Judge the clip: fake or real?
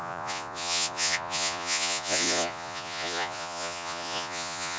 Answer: fake